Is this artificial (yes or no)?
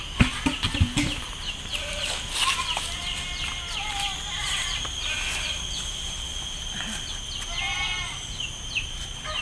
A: no